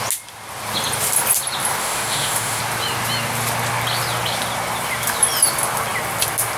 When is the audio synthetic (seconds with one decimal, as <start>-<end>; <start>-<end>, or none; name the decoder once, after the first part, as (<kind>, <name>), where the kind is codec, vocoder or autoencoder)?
1.8-2.6 (autoencoder, DAC-VAE)